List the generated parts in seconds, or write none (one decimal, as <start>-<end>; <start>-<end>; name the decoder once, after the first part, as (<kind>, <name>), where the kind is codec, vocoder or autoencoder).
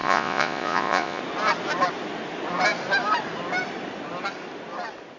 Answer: 0.0-1.2 (vocoder, Vocos)